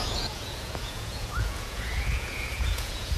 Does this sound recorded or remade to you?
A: remade